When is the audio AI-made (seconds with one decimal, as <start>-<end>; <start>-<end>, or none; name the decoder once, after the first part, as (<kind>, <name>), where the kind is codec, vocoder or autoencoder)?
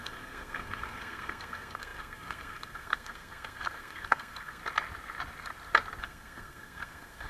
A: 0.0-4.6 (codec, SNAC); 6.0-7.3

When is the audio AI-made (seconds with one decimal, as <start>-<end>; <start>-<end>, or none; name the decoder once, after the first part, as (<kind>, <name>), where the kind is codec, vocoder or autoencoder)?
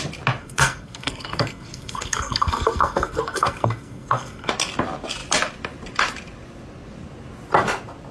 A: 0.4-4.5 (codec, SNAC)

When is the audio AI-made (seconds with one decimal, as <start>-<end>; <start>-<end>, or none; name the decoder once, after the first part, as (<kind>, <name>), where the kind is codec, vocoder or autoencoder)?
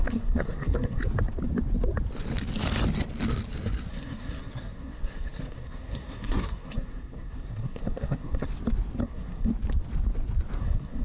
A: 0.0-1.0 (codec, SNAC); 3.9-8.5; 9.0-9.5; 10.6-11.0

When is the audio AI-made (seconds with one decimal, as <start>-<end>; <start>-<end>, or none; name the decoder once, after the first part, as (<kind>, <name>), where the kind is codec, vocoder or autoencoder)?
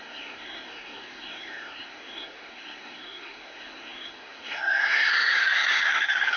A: 0.0-6.4 (codec, SNAC)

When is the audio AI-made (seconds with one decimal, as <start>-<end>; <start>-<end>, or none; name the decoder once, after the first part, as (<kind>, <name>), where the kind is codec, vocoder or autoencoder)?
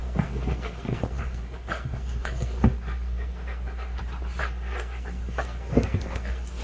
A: 0.0-4.0 (codec, SNAC); 4.4-6.6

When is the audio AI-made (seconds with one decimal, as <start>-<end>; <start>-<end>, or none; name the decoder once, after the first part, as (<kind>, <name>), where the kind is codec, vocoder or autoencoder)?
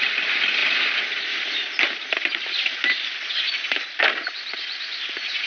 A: none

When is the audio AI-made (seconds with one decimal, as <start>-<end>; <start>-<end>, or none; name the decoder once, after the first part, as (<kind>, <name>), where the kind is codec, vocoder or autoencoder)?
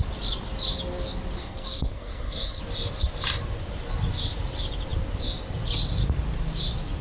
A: 1.4-2.6 (codec, SNAC)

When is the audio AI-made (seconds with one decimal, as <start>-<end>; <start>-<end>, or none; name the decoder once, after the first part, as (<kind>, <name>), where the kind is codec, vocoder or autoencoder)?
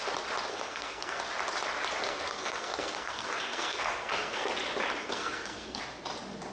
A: 0.5-1.2 (codec, SNAC); 2.0-4.5; 5.0-5.8